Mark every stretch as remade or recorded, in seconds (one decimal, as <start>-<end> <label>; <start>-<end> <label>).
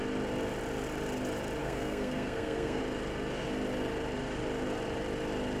0.0-1.6 recorded; 1.6-2.8 remade; 2.8-5.6 recorded